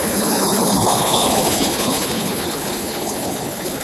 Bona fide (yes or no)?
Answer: no